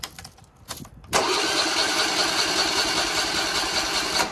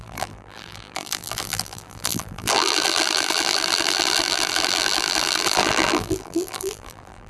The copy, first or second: second